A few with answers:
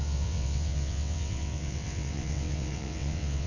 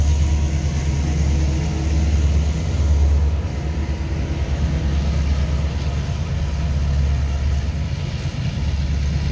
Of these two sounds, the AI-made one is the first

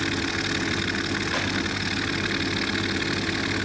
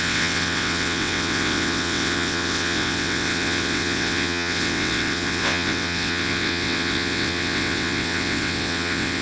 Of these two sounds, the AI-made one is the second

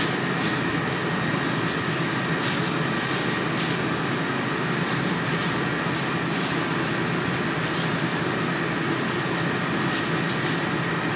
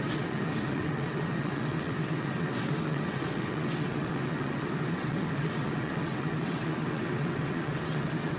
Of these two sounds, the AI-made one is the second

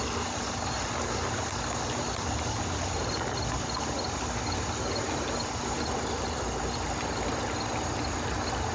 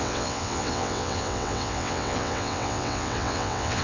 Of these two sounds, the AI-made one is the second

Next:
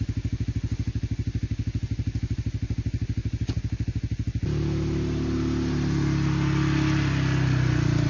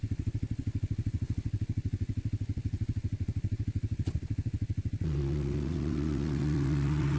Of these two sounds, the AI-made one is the second